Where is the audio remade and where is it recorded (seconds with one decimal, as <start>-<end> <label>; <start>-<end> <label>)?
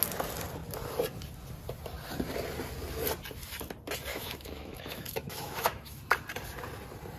0.0-4.1 recorded; 4.1-6.0 remade; 6.0-7.2 recorded